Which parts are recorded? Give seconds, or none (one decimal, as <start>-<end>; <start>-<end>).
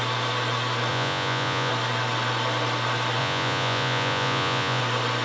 0.0-0.9; 1.7-3.2; 4.8-5.2